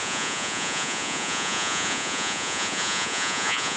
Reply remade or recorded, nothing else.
remade